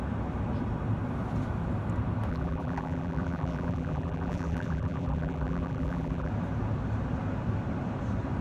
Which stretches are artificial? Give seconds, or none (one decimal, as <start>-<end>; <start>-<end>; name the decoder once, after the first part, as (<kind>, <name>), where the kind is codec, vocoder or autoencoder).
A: 2.3-6.3 (vocoder, BigVGAN v2)